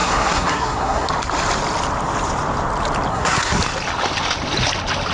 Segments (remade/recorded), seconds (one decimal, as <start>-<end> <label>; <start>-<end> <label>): 0.0-1.1 remade; 1.1-3.1 recorded; 3.1-3.6 remade; 3.6-5.1 recorded